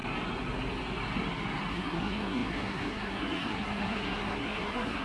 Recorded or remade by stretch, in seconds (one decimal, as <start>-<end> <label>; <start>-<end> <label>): 0.0-1.7 recorded; 1.7-5.0 remade